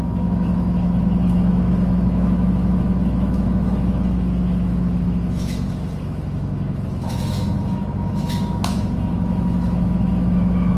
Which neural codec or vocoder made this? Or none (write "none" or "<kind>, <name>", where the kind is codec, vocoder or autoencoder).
autoencoder, DAC-VAE